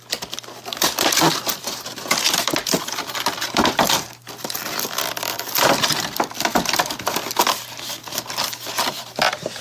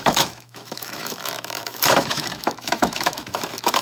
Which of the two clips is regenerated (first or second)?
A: second